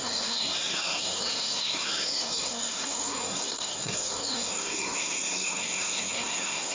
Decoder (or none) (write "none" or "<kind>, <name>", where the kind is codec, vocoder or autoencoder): codec, SNAC